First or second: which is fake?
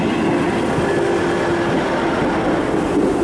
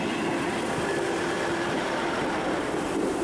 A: second